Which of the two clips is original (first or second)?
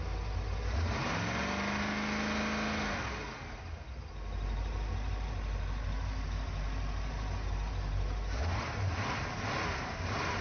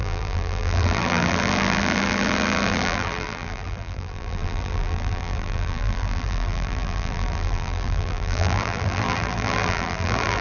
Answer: first